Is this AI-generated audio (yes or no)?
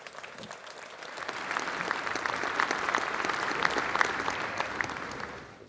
no